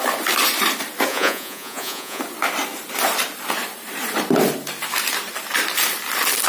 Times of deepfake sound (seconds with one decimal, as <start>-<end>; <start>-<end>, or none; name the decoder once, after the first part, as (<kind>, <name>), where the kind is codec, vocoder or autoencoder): 1.1-2.2 (vocoder, Vocos)